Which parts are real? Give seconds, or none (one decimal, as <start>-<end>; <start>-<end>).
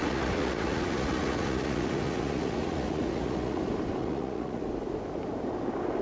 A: 3.6-4.0; 4.6-6.0